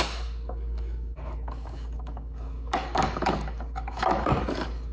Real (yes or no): no